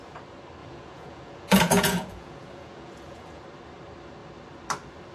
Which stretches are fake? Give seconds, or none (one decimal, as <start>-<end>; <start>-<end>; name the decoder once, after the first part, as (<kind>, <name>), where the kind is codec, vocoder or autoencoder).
0.6-3.4 (vocoder, Vocos)